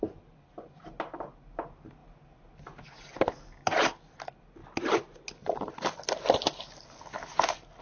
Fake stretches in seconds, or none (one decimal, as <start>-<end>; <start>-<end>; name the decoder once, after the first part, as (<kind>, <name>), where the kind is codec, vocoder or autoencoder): none